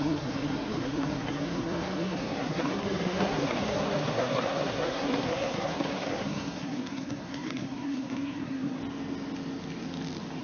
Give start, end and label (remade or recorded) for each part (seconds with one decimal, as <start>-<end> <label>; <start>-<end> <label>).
0.0-8.8 remade; 8.8-10.4 recorded